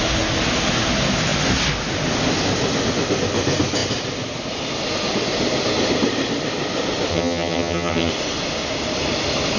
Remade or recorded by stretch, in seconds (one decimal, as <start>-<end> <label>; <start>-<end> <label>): 0.0-7.1 recorded; 7.1-8.1 remade; 8.1-9.6 recorded